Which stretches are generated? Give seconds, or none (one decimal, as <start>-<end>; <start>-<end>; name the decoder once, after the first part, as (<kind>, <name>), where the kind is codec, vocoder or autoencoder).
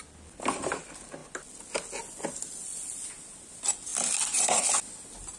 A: none